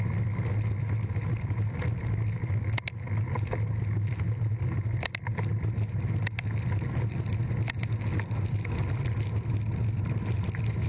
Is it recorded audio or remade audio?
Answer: recorded